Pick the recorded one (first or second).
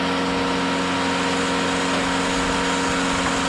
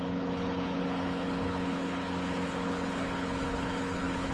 first